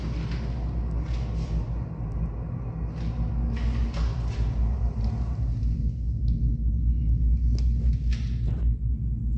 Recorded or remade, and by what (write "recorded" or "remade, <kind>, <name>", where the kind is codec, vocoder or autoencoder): recorded